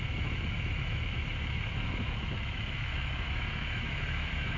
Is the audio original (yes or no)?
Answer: no